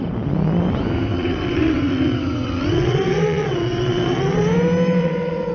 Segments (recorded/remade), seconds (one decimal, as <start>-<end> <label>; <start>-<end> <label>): 0.0-1.1 recorded; 1.1-4.4 remade; 4.4-5.0 recorded; 5.0-5.5 remade